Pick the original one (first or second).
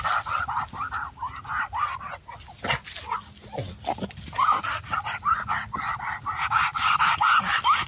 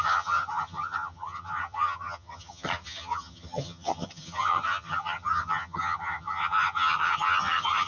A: first